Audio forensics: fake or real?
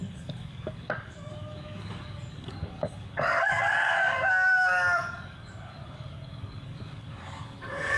fake